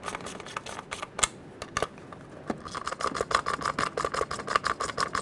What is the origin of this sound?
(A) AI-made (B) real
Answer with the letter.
B